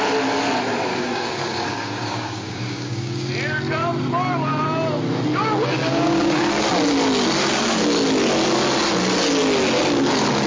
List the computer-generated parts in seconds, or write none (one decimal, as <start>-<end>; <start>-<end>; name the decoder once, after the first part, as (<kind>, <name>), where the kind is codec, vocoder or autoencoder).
0.9-3.3 (codec, DAC); 5.8-6.5